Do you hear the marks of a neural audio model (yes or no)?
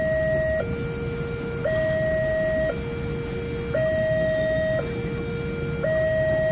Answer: no